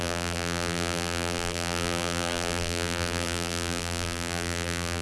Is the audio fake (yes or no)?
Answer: yes